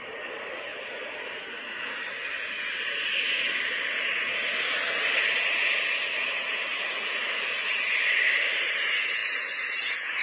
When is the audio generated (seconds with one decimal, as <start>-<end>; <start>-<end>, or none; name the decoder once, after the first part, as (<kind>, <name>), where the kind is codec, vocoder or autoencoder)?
none